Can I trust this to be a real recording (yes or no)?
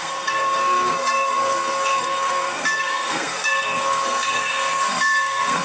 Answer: no